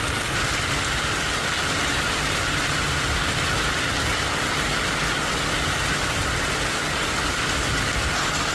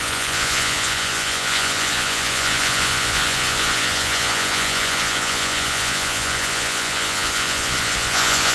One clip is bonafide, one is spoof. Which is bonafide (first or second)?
first